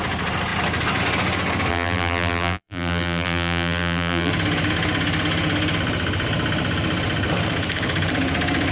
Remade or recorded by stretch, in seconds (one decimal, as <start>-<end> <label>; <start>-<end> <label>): 0.0-1.7 recorded; 1.7-4.3 remade; 4.3-8.7 recorded

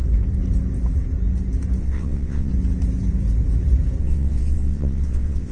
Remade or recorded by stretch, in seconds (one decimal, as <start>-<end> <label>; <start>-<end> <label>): 0.0-1.8 recorded; 1.8-2.5 remade; 2.5-4.0 recorded; 4.0-5.5 remade

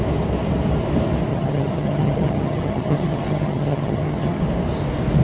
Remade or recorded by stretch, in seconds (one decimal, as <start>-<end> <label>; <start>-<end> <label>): 0.0-1.3 recorded; 1.3-4.4 remade; 4.4-5.2 recorded

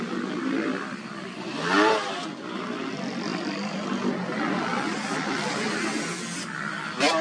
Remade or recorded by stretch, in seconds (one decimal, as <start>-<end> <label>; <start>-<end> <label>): 0.0-3.3 recorded; 3.3-4.1 remade; 4.1-7.2 recorded

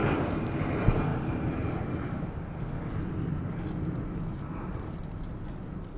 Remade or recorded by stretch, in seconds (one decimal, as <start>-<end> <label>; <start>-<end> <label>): 0.0-0.6 remade; 0.6-6.0 recorded

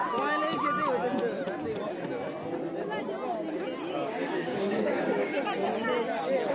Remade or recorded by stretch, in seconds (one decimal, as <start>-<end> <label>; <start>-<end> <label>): 0.0-3.9 recorded; 3.9-5.3 remade; 5.3-6.5 recorded

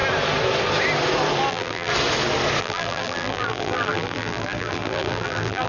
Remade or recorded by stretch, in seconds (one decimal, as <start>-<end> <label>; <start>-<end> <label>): 0.0-1.5 recorded; 1.5-1.9 remade; 1.9-2.6 recorded; 2.6-5.7 remade

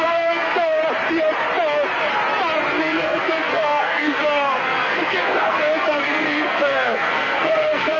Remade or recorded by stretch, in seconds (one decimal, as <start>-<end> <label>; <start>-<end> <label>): 0.0-0.8 remade; 0.8-2.8 recorded; 2.8-8.0 remade